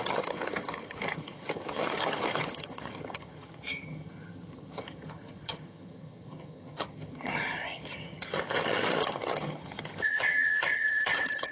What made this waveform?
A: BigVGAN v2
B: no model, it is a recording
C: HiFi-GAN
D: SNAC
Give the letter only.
C